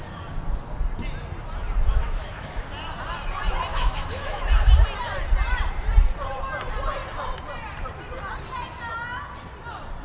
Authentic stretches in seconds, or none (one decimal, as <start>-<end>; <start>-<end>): 0.0-1.9; 2.6-3.7; 4.4-10.0